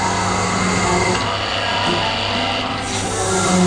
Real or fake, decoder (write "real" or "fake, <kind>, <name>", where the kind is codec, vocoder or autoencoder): real